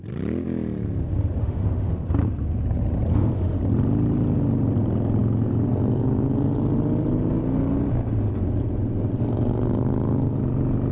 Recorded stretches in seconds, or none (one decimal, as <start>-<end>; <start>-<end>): 0.0-1.4; 1.9-3.1; 3.6-10.9